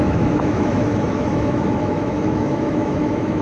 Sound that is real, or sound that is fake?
fake